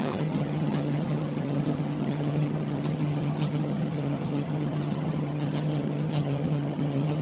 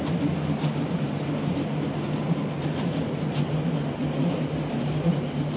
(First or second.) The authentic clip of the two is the second